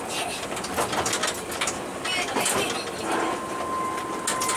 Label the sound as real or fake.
real